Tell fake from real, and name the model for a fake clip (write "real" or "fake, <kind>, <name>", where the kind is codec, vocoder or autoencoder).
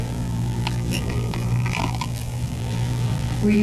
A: fake, vocoder, BigVGAN v2